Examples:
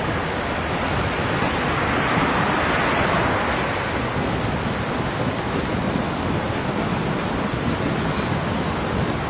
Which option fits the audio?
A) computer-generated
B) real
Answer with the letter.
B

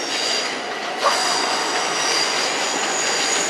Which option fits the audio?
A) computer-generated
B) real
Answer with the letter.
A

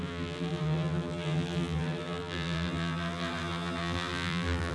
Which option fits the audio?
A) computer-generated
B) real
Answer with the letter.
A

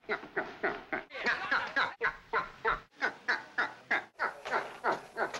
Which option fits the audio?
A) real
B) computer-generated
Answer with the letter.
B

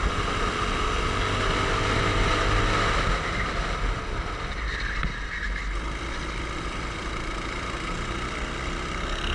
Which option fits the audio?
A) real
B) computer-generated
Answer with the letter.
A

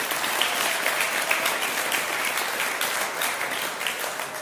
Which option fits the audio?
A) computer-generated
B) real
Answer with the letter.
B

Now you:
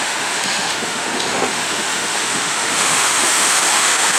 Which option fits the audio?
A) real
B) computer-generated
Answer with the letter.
B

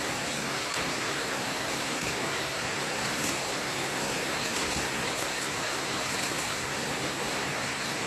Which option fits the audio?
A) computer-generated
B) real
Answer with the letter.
A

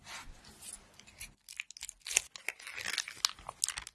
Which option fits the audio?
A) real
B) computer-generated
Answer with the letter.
A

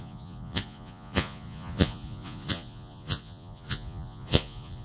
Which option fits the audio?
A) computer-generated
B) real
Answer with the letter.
A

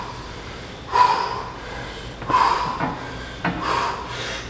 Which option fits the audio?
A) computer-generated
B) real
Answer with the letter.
B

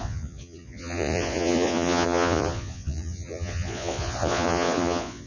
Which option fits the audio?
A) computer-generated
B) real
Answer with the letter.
A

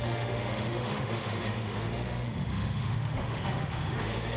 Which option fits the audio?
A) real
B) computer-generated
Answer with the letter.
B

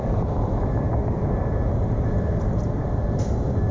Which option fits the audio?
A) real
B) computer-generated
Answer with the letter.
B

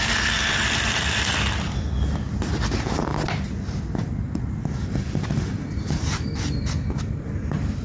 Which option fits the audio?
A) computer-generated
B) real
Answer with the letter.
B